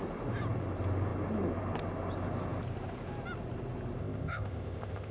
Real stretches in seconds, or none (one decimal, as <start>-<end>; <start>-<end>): 0.0-4.0